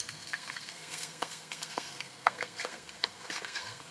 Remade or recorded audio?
remade